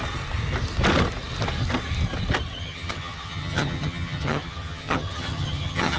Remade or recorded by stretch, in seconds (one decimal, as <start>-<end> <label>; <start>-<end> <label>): 0.0-2.6 recorded; 2.6-6.0 remade